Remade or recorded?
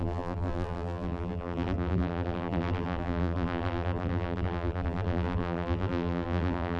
remade